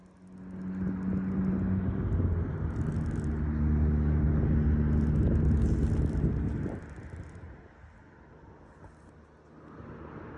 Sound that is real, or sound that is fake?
real